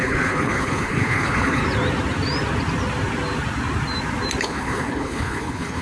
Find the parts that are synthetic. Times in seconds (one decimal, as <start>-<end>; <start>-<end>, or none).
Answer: 0.0-1.6; 4.4-5.8